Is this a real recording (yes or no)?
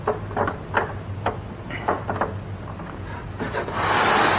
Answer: yes